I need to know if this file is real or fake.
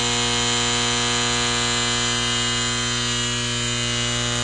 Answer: real